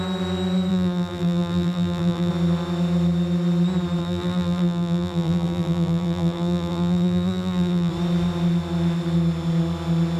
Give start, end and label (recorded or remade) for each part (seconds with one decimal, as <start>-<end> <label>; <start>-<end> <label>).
0.0-0.7 recorded; 0.7-2.3 remade; 2.3-4.0 recorded; 4.0-7.9 remade; 7.9-10.2 recorded